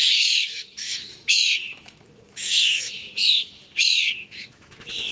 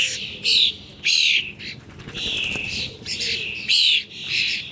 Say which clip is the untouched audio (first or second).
second